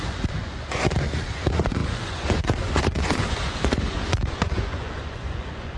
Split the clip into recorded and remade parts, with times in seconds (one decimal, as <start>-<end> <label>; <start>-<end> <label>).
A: 0.0-5.8 remade